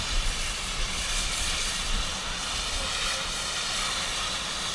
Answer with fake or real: real